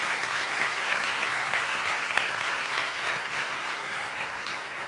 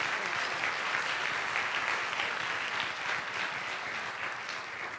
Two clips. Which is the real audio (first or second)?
second